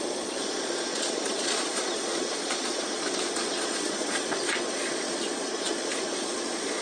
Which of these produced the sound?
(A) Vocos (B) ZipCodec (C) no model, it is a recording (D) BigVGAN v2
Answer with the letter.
A